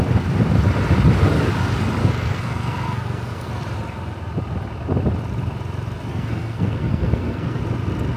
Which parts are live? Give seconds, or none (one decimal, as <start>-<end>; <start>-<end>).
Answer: 0.0-2.0; 3.5-6.1; 7.6-8.2